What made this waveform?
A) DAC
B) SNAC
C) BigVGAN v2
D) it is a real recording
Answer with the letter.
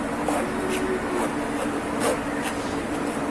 D